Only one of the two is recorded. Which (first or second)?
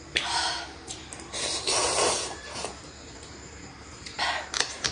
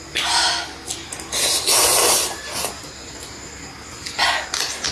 second